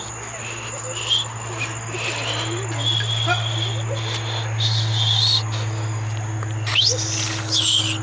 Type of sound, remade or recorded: recorded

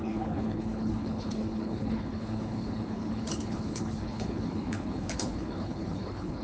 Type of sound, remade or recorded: remade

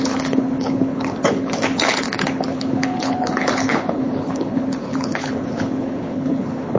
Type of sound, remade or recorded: remade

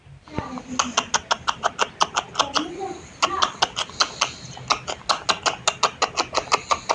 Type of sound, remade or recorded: recorded